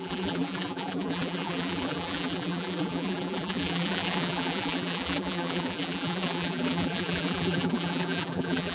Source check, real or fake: fake